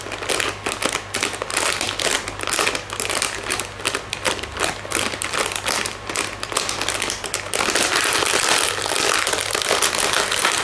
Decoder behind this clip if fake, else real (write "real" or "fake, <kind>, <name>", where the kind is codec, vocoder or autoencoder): real